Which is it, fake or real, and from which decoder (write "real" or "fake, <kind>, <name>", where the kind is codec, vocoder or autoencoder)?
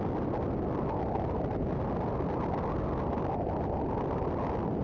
real